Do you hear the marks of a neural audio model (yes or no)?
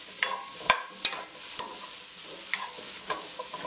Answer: no